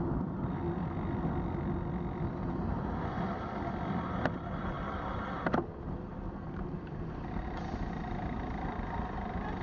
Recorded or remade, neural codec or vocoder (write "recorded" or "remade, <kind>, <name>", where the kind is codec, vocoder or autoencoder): recorded